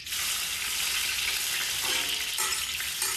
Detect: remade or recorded recorded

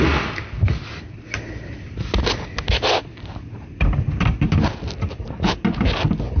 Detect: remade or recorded recorded